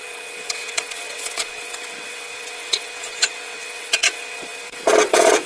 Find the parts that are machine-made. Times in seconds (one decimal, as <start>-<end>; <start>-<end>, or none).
0.0-5.5